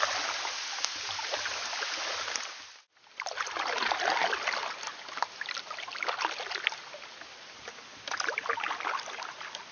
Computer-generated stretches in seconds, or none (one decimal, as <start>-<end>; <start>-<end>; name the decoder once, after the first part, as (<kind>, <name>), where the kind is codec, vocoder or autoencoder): none